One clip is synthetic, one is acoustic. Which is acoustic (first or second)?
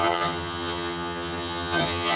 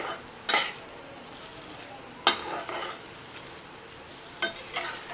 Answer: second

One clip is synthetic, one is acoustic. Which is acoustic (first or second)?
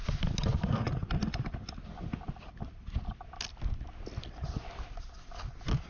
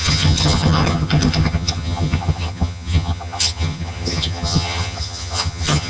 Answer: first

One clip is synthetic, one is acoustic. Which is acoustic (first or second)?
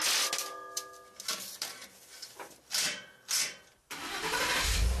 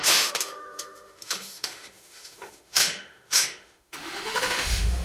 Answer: first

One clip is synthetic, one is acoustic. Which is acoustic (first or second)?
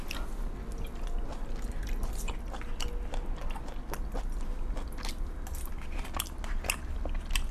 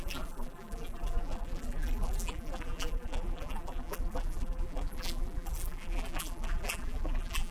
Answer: first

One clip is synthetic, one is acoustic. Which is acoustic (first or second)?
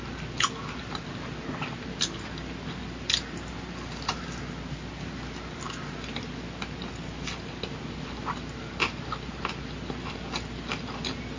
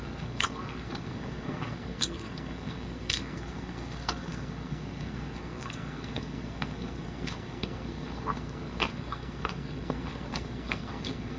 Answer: first